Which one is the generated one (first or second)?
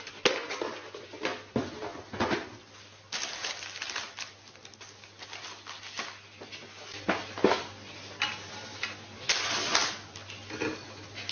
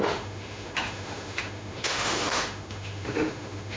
second